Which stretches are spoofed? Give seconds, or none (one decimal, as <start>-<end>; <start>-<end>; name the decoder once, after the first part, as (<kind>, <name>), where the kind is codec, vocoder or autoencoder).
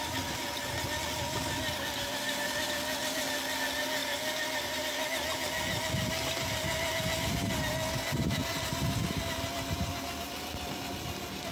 none